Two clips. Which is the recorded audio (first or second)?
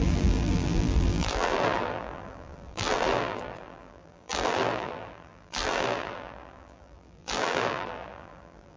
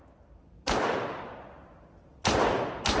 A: second